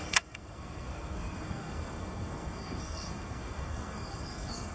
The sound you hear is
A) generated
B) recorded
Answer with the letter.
A